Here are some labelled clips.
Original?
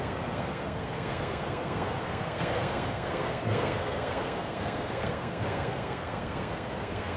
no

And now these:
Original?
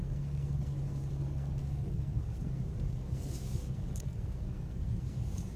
no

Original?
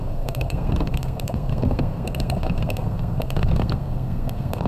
no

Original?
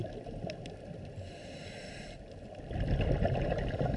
yes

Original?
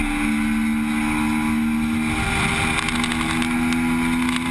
yes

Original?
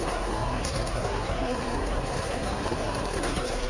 no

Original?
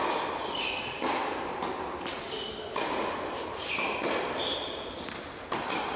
yes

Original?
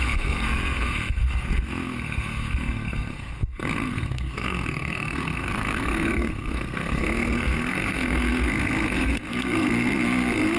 no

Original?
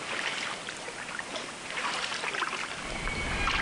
yes